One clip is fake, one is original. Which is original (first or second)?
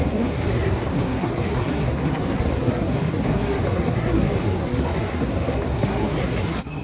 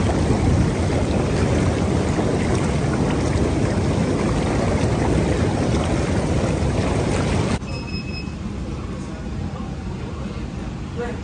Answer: second